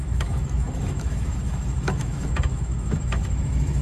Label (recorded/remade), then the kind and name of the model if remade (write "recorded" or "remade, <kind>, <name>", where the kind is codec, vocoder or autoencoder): remade, autoencoder, DAC-VAE